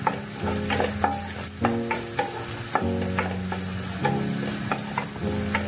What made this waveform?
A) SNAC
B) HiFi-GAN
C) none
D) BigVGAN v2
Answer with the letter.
C